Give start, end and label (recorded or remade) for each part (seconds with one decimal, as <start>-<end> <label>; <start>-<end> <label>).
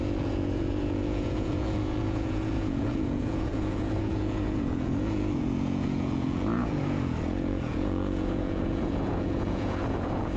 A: 0.0-10.4 remade